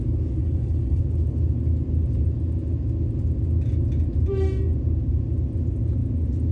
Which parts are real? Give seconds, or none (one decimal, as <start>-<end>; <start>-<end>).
0.0-0.4; 1.0-6.5